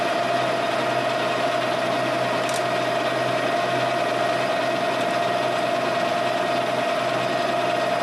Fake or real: real